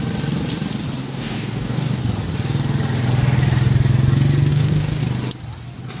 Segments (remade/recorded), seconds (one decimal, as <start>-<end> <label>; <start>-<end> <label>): 0.0-1.0 recorded; 1.0-2.0 remade; 2.0-4.5 recorded; 4.5-5.0 remade; 5.0-6.0 recorded

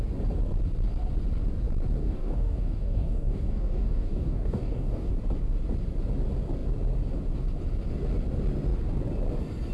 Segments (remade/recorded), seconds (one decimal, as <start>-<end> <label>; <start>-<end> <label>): 0.0-2.0 recorded; 2.0-5.1 remade; 5.1-9.7 recorded

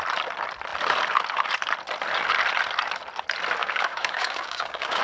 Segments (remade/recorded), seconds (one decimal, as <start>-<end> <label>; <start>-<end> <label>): 0.0-3.6 recorded; 3.6-5.0 remade

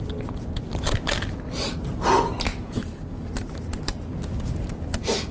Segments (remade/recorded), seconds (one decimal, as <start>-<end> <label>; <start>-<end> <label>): 0.0-5.3 recorded